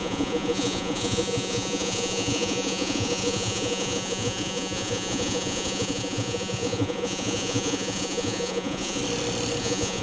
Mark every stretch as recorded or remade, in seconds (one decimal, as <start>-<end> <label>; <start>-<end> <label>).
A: 0.0-9.0 remade; 9.0-9.6 recorded; 9.6-10.0 remade